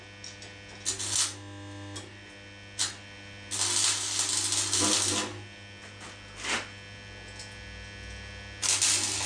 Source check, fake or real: real